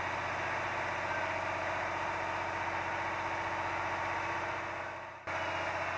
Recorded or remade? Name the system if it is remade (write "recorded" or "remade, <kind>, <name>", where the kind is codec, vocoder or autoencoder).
recorded